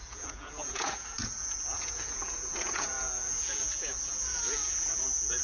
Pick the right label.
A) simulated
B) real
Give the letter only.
A